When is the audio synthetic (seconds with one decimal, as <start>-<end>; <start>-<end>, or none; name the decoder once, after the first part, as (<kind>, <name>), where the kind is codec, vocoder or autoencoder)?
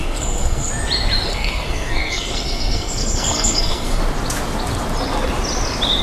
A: 0.0-0.7 (codec, SNAC); 1.3-4.0